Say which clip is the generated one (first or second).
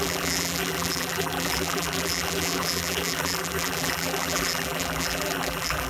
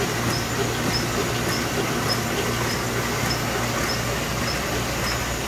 first